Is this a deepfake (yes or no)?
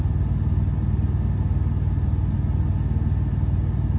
no